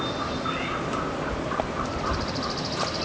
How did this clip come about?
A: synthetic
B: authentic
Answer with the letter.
B